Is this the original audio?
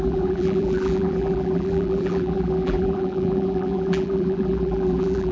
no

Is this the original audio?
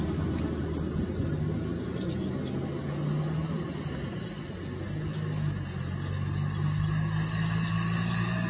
yes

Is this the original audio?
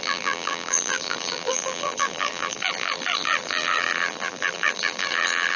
no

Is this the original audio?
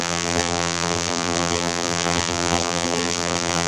no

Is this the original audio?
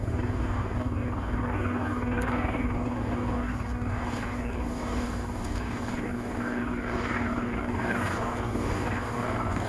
no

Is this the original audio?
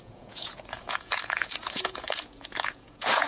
no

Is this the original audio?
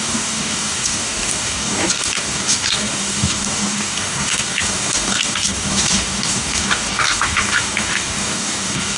no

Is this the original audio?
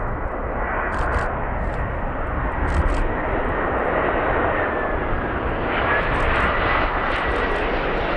yes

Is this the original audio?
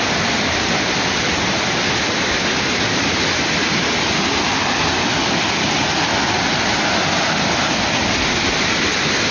yes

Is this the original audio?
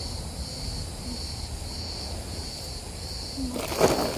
no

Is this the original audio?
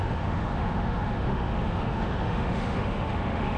no